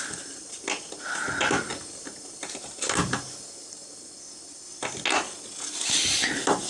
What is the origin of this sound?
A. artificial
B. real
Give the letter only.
B